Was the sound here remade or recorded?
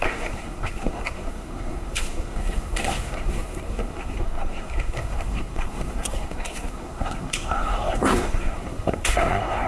remade